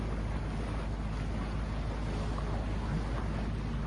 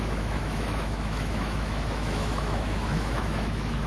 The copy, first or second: second